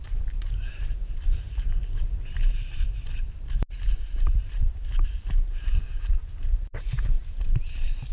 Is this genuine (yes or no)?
no